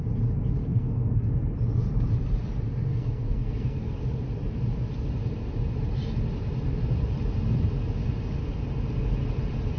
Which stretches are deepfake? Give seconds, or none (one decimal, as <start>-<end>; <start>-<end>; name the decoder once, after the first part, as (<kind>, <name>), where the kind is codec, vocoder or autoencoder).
0.6-1.3 (codec, SNAC); 2.9-4.0